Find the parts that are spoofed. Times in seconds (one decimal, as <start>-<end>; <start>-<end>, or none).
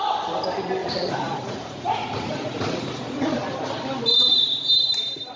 0.8-3.4